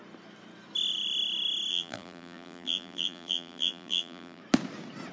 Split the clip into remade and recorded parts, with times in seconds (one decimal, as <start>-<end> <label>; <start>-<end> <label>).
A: 0.0-1.7 recorded; 1.7-4.4 remade; 4.4-5.1 recorded